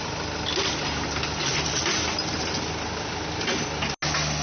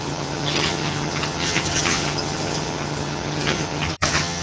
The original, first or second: first